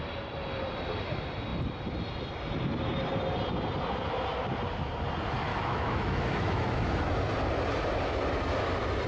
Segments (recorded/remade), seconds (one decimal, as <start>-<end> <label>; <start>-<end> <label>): 0.0-5.5 recorded; 5.5-7.1 remade; 7.1-9.1 recorded